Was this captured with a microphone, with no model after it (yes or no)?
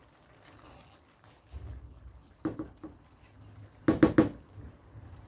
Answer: yes